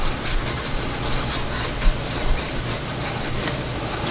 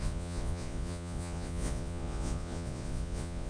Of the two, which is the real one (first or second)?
first